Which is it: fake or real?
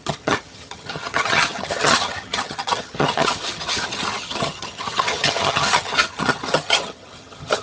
fake